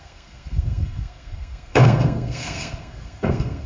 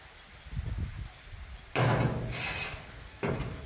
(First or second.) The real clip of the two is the second